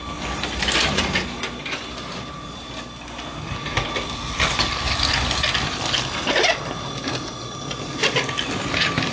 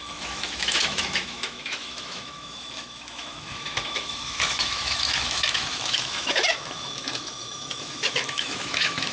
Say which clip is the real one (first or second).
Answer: first